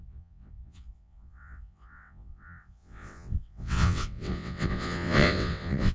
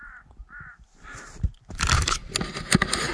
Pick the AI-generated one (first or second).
first